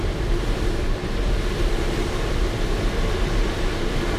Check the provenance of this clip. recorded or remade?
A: remade